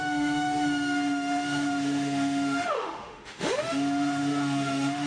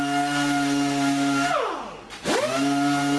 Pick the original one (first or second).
second